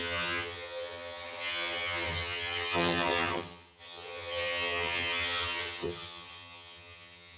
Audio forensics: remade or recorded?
remade